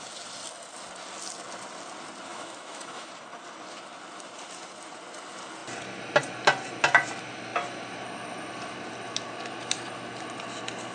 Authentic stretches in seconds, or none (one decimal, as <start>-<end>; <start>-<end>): 0.0-2.3; 3.1-10.9